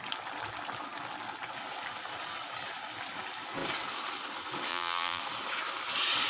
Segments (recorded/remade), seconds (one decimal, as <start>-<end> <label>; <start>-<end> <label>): 0.0-4.7 recorded; 4.7-5.2 remade; 5.2-6.3 recorded